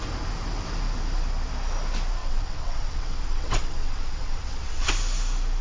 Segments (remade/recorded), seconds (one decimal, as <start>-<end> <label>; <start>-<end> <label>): 0.0-2.2 recorded; 2.2-4.9 remade; 4.9-5.6 recorded